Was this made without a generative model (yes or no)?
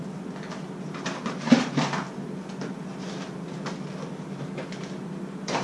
yes